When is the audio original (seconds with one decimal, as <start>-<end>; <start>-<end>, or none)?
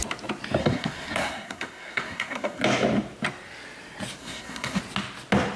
0.0-0.6; 2.6-4.2; 4.8-5.6